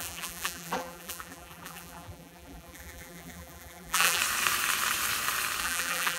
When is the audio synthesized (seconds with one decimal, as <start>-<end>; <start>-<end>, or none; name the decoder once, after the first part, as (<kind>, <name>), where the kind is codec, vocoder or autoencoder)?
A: 0.0-4.2 (vocoder, BigVGAN v2); 5.6-6.2